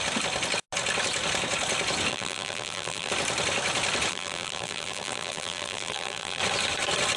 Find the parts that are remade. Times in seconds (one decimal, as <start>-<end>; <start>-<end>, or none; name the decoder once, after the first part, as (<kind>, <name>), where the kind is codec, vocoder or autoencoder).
2.1-3.1 (vocoder, BigVGAN v2); 4.1-6.4